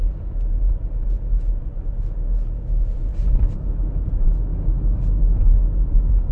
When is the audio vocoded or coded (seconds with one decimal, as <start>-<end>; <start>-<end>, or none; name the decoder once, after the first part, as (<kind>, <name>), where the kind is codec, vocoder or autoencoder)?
3.1-3.8 (codec, DAC); 4.5-6.3